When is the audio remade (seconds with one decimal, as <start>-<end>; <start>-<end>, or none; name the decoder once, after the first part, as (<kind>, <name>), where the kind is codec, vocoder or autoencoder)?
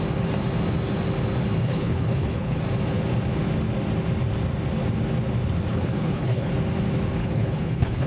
1.6-2.6 (codec, HILCodec); 5.7-6.5; 7.2-8.1